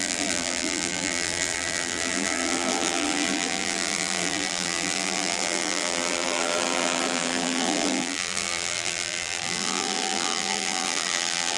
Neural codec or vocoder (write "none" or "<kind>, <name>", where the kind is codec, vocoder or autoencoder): vocoder, BigVGAN v2